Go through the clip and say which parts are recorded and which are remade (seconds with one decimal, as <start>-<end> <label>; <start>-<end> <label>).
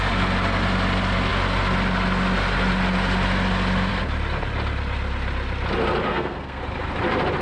0.0-6.1 recorded; 6.1-6.6 remade; 6.6-7.4 recorded